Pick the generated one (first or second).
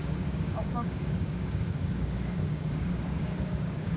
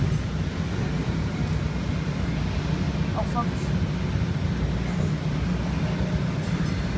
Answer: first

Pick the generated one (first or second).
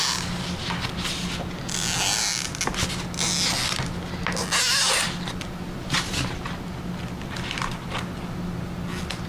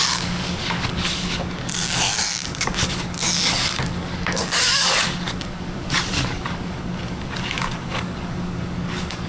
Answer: second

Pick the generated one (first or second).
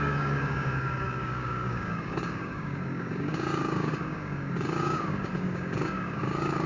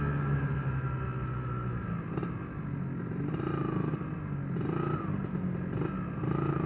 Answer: first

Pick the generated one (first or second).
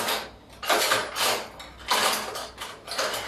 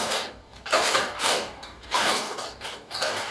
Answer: second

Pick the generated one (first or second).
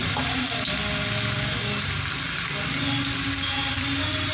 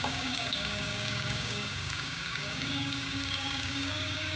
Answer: second